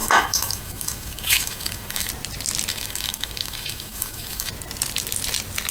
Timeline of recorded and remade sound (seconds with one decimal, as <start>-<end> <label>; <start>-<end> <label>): 0.0-2.1 remade; 2.1-2.7 recorded; 2.7-4.5 remade; 4.5-5.7 recorded